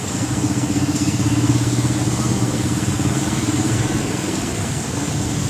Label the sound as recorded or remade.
remade